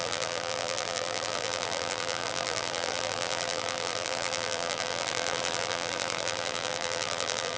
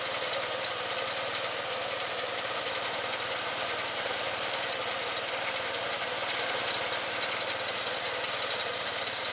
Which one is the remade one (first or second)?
first